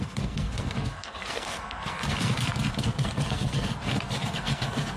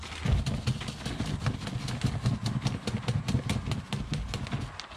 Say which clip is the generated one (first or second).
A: first